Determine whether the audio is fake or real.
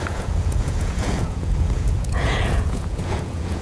fake